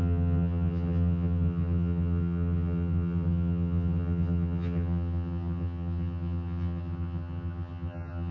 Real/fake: fake